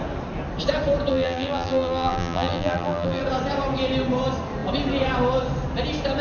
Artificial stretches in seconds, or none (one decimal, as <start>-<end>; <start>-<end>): 1.1-3.2